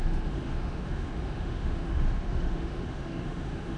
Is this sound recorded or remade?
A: remade